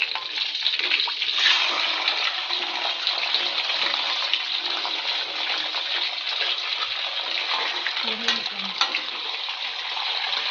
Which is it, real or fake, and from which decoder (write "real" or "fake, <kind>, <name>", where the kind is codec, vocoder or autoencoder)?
real